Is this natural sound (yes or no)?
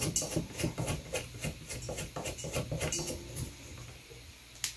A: yes